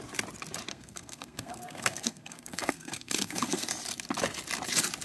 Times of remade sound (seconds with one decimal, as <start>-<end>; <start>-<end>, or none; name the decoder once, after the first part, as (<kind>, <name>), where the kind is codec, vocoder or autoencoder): 0.7-3.7 (codec, SNAC)